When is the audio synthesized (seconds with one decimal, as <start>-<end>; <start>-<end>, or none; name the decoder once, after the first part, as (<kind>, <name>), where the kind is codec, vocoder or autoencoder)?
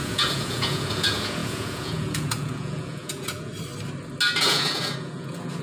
0.0-3.5 (vocoder, Vocos); 4.4-5.6